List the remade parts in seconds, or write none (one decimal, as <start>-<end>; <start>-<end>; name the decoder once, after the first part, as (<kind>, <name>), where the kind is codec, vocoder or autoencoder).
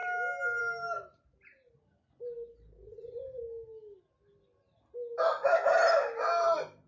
none